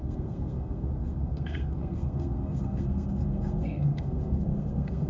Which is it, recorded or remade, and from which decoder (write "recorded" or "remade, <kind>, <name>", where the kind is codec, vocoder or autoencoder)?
remade, codec, SNAC